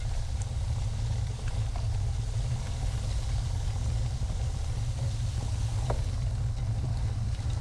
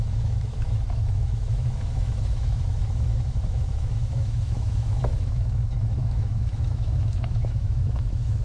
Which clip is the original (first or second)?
first